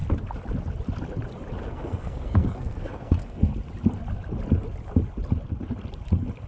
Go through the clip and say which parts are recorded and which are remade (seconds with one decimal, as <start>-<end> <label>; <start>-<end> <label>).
0.0-1.6 recorded; 1.6-3.5 remade; 3.5-6.5 recorded